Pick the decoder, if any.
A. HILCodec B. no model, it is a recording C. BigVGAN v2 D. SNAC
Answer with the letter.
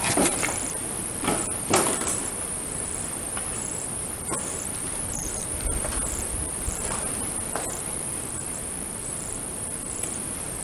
C